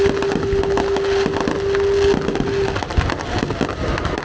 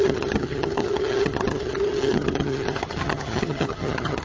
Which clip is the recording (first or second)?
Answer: first